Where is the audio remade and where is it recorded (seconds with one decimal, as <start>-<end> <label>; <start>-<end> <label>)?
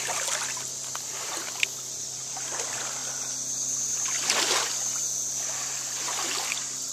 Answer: 0.0-6.9 recorded